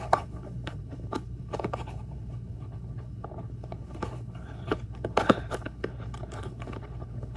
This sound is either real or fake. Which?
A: fake